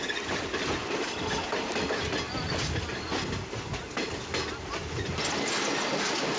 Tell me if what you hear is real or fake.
real